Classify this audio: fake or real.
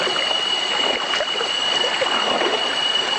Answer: real